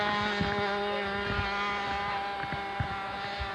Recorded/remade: recorded